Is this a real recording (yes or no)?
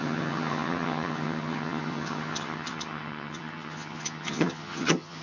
no